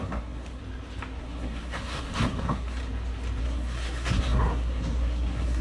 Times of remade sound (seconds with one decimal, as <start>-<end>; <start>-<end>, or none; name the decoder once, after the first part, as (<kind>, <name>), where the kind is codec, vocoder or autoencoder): 0.0-0.6 (codec, SNAC); 1.2-2.8; 3.4-5.6

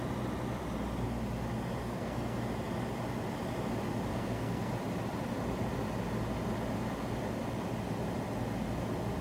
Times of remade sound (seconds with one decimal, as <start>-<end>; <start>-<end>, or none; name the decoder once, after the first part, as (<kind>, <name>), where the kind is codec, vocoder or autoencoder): 1.8-2.4 (codec, SNAC); 4.1-4.7

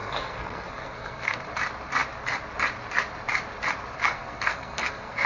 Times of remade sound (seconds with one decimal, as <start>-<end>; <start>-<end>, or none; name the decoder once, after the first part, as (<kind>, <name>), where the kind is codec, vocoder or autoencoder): 0.0-1.4 (codec, SNAC); 4.0-5.3

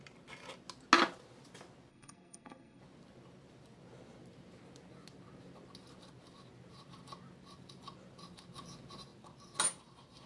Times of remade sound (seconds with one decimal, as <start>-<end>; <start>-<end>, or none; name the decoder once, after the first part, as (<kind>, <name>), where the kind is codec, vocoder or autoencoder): 1.9-2.8 (codec, SNAC)

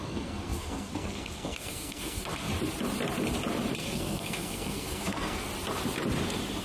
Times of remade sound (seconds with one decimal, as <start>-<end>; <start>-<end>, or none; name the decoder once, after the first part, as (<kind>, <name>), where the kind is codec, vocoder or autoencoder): 0.0-2.5 (codec, SNAC); 3.8-5.5

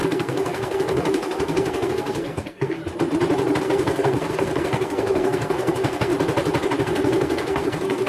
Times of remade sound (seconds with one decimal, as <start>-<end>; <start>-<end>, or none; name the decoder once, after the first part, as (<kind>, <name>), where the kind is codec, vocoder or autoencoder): 0.0-2.8 (codec, SNAC); 3.6-6.1; 6.8-8.1

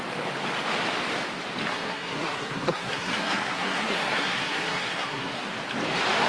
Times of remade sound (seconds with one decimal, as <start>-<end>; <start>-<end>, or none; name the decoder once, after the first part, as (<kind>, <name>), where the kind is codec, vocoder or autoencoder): 1.7-5.5 (codec, SNAC)

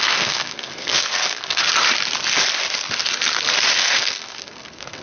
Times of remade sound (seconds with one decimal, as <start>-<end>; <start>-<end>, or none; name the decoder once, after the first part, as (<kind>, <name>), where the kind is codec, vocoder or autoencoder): 0.0-1.6 (codec, SNAC); 3.7-5.0